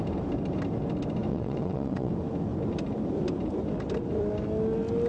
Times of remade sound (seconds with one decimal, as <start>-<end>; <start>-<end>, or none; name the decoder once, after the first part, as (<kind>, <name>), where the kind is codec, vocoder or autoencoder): 1.3-2.1 (vocoder, WaveNeXt)